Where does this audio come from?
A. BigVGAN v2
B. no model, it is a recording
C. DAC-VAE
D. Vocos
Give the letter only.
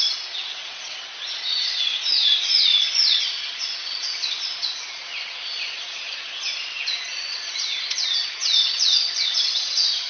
D